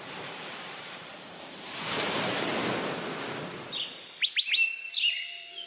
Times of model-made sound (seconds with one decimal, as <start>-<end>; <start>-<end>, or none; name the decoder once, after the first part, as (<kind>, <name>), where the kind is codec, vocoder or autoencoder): 0.0-2.5 (vocoder, BigVGAN v2); 5.1-5.7